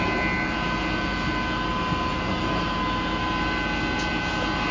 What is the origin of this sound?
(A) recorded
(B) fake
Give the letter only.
A